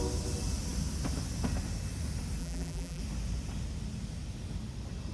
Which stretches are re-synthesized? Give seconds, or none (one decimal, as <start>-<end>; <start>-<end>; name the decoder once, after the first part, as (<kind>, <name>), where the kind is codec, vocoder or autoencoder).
2.4-3.0 (vocoder, BigVGAN v2)